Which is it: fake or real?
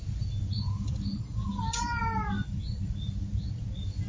real